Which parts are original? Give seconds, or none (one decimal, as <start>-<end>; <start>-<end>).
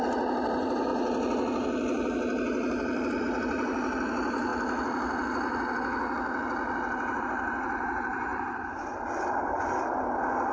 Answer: 0.9-3.2; 4.5-7.2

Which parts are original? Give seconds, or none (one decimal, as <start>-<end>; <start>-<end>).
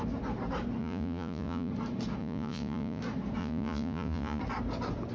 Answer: 0.0-0.8; 1.7-2.2; 3.0-3.4; 4.4-5.1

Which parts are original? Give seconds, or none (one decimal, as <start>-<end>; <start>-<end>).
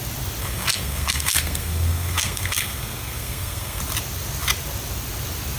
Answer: 0.0-0.4; 3.8-5.6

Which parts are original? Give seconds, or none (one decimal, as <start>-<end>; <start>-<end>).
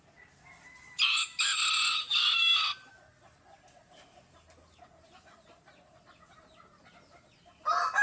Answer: 0.0-8.0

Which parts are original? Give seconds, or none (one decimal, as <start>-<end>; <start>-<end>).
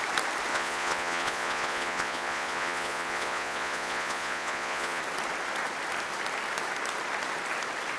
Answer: 0.0-0.5; 5.0-8.0